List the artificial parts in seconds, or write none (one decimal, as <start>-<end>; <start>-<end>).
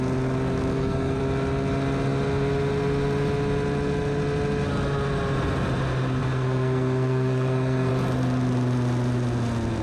0.7-1.2; 6.2-7.9